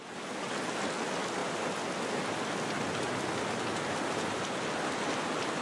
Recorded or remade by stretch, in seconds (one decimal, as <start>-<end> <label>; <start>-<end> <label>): 0.0-5.6 recorded